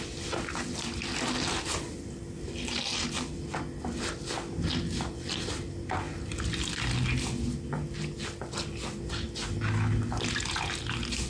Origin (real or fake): real